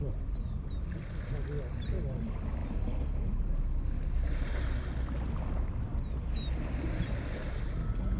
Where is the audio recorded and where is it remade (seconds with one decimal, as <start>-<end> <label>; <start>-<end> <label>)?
0.0-8.2 recorded